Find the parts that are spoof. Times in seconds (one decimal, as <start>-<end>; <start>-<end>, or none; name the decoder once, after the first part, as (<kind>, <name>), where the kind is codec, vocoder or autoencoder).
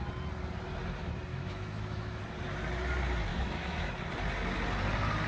1.3-2.2 (autoencoder, DAC-VAE); 3.3-3.9